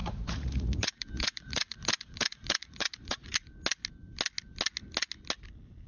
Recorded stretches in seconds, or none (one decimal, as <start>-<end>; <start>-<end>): 3.3-5.9